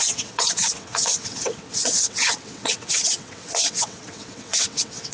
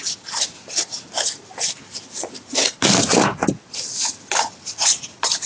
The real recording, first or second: second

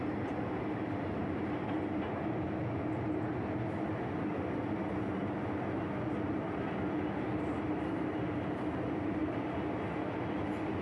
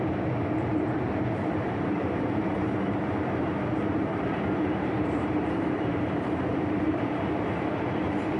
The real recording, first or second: first